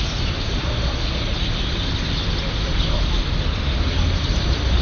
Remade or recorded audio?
recorded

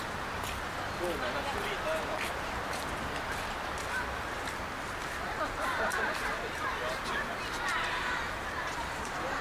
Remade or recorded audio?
recorded